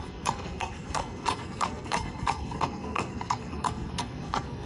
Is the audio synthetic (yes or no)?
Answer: yes